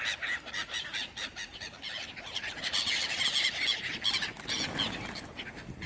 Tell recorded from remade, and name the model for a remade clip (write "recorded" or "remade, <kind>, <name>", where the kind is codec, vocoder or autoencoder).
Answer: recorded